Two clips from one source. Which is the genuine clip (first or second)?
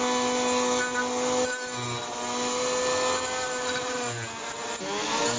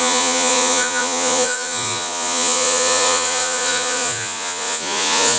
first